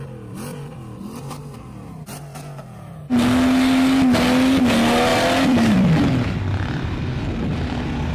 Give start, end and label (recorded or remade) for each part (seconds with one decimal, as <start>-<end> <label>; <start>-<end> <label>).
0.0-5.1 recorded; 5.1-8.1 remade